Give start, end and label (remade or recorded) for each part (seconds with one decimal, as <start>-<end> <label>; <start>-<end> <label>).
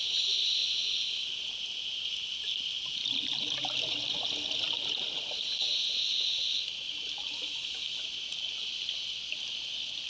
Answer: 0.0-10.1 recorded